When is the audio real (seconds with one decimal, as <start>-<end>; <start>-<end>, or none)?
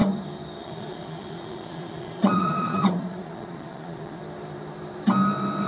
0.0-0.6; 4.2-5.7